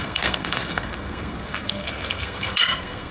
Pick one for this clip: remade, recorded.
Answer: remade